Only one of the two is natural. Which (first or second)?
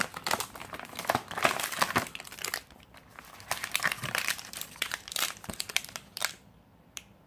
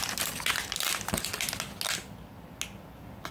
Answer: second